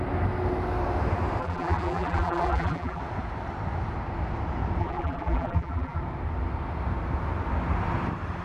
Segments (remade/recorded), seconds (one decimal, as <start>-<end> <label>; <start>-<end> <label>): 0.0-1.4 recorded; 1.4-3.0 remade; 3.0-4.8 recorded; 4.8-6.0 remade; 6.0-8.4 recorded